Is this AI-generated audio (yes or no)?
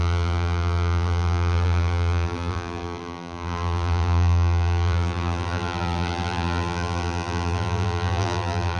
yes